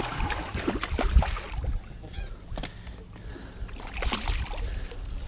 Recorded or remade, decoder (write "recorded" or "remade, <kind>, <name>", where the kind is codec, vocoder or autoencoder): recorded